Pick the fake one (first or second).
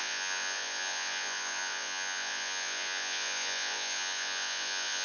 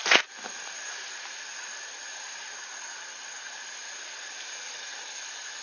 first